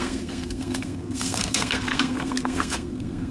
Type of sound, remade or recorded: remade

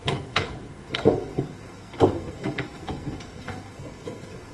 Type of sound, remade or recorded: remade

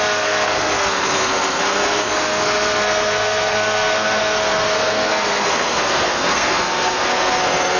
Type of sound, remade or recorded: remade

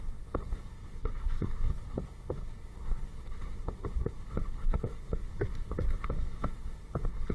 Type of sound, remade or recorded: remade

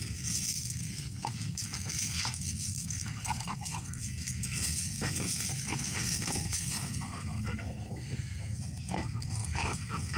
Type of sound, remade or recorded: remade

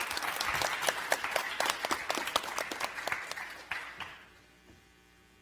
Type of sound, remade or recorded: recorded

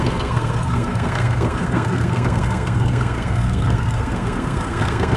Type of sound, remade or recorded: remade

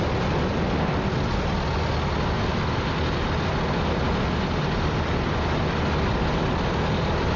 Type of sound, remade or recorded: recorded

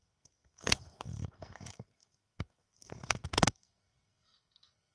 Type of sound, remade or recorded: remade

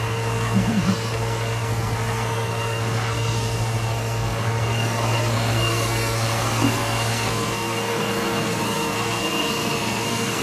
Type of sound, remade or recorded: remade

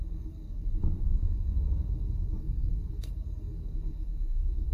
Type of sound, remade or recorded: remade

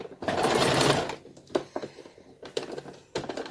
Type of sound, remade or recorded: recorded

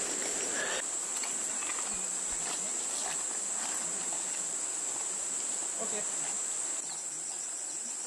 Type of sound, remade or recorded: recorded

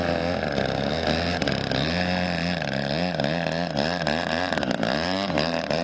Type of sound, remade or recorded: recorded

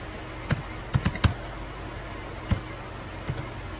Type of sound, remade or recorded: recorded